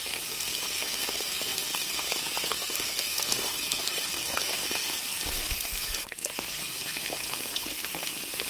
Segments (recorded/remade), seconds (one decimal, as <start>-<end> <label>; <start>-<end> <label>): 0.0-8.5 remade

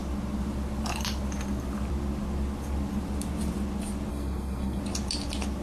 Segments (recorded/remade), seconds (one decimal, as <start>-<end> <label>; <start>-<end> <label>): 0.0-4.1 recorded; 4.1-4.8 remade; 4.8-5.6 recorded

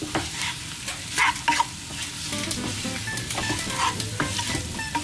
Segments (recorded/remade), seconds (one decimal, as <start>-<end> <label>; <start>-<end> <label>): 0.0-5.0 recorded

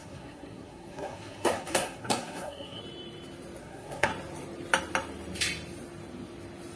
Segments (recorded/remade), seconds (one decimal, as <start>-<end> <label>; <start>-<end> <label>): 0.0-2.8 remade; 2.8-3.6 recorded; 3.6-4.1 remade; 4.1-6.8 recorded

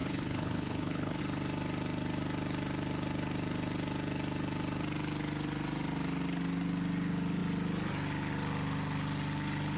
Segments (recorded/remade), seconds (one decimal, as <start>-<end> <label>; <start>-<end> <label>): 0.0-1.2 remade; 1.2-9.8 recorded